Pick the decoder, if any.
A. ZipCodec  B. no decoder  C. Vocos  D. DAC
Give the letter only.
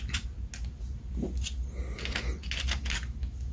B